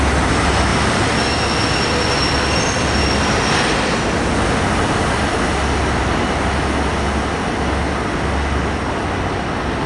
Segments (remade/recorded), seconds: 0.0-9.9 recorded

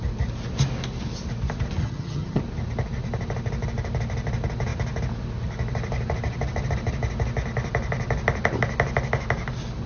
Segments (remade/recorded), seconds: 0.0-1.8 recorded; 1.8-2.4 remade; 2.4-9.9 recorded

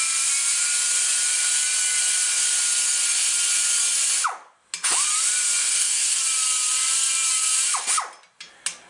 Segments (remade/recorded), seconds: 0.0-5.6 recorded; 5.6-6.2 remade; 6.2-8.9 recorded

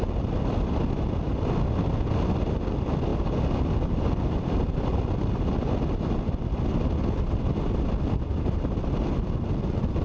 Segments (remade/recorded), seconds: 0.0-10.0 recorded

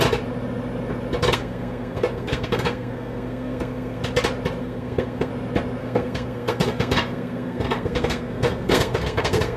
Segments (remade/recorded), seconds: 0.0-1.2 recorded; 1.2-4.0 remade; 4.0-4.6 recorded; 4.6-5.3 remade; 5.3-5.8 recorded; 5.8-9.6 remade

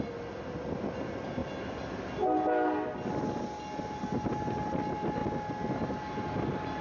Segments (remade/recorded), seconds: 0.0-6.8 recorded

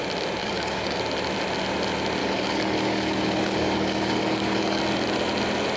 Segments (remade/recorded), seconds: 0.0-0.4 recorded; 0.4-1.0 remade; 1.0-2.2 recorded; 2.2-4.8 remade; 4.8-5.8 recorded

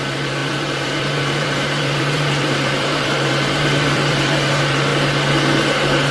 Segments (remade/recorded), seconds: 0.0-4.9 remade; 4.9-6.1 recorded